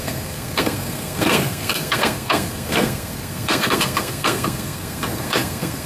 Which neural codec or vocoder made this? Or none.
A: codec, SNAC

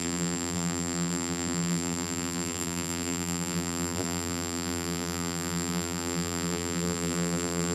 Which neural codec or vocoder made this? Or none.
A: vocoder, BigVGAN v2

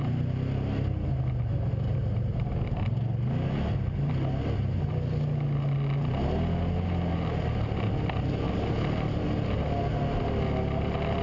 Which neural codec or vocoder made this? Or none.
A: none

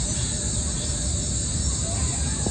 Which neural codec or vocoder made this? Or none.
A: none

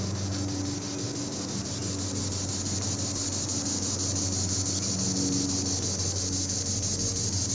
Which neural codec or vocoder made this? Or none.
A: none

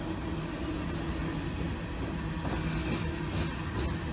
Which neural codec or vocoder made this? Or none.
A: none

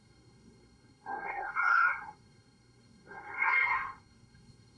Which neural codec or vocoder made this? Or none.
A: codec, SNAC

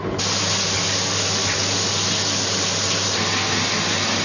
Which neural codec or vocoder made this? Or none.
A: none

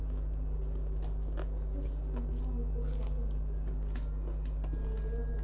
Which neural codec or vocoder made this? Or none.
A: none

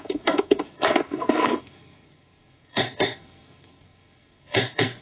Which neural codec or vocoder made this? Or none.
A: codec, SNAC